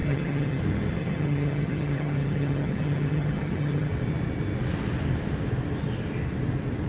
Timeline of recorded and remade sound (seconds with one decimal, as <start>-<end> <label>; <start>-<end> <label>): 0.0-0.6 remade; 0.6-1.0 recorded; 1.0-3.9 remade; 3.9-6.9 recorded